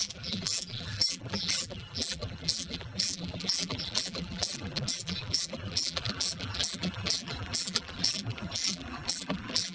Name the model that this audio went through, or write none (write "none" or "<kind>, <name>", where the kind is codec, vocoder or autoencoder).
vocoder, BigVGAN v2